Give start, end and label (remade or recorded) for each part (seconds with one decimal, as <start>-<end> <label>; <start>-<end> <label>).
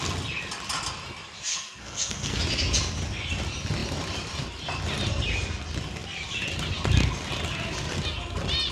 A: 0.0-1.5 recorded; 1.5-2.4 remade; 2.4-8.7 recorded